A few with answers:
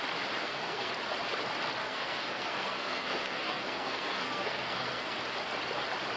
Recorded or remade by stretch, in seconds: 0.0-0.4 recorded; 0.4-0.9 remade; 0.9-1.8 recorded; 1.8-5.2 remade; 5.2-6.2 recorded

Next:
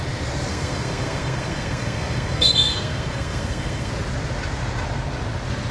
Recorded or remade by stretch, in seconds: 0.0-0.5 recorded; 0.5-3.9 remade; 3.9-5.7 recorded

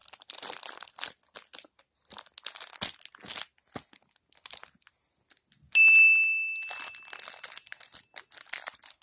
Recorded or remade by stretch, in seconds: 0.0-9.0 recorded

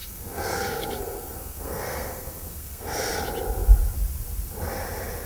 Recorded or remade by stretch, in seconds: 0.0-3.2 remade; 3.2-5.3 recorded

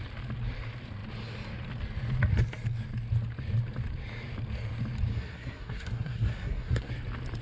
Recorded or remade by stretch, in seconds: 0.0-5.1 recorded; 5.1-6.9 remade; 6.9-7.4 recorded